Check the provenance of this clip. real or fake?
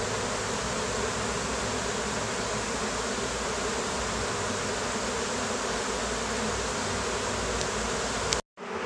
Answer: real